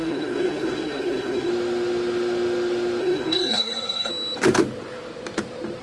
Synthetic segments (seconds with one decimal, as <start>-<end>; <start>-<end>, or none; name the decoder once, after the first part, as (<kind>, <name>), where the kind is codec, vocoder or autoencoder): 0.0-1.5 (codec, SNAC); 3.0-4.1